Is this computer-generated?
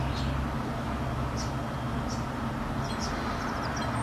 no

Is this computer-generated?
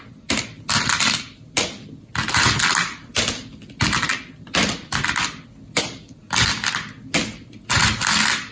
no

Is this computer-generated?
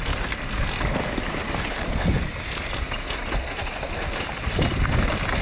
no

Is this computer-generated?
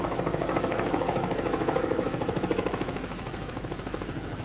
yes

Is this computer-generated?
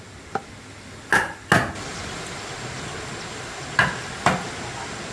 no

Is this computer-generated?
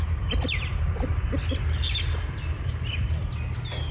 no